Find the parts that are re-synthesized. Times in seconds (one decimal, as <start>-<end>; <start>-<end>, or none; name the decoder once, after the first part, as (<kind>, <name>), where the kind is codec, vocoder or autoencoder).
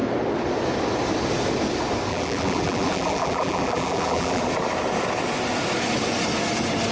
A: 2.1-4.4 (vocoder, BigVGAN v2)